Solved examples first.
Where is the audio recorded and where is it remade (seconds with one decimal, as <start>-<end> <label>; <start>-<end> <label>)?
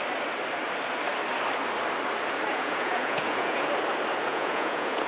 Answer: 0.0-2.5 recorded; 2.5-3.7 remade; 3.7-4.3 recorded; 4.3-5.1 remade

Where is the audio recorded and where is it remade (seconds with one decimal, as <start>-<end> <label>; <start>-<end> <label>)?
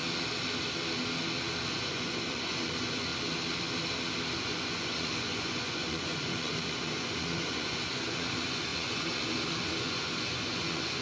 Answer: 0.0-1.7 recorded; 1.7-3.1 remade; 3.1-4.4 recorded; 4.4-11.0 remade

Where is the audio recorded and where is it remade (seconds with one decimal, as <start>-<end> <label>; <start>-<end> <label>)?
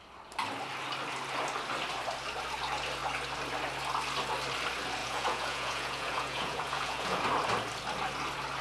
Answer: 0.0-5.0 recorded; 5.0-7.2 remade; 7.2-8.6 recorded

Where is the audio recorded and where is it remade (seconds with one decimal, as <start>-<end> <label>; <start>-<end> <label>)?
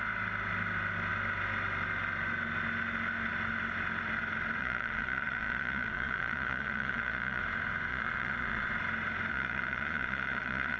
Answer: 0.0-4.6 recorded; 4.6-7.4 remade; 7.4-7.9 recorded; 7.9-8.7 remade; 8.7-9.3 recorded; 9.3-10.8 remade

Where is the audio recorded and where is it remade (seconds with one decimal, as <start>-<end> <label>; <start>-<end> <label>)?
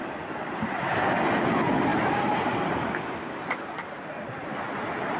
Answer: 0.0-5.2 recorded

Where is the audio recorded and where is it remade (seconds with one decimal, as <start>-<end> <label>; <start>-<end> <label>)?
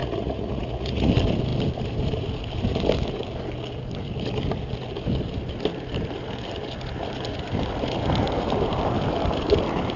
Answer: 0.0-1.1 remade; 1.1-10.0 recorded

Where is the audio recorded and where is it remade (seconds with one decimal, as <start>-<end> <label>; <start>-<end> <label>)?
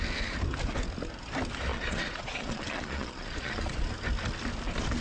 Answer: 0.0-1.7 recorded; 1.7-3.9 remade; 3.9-5.0 recorded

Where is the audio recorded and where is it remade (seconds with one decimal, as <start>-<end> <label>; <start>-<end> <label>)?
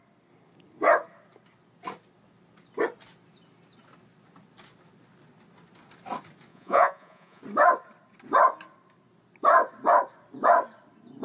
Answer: 0.0-6.5 recorded; 6.5-7.4 remade; 7.4-11.2 recorded